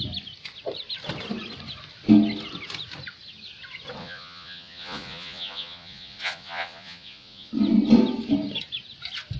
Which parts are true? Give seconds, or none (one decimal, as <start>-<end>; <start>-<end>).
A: 0.0-4.0; 7.5-9.4